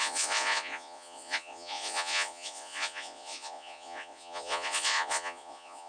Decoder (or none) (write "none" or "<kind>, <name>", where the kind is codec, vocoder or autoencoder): vocoder, Vocos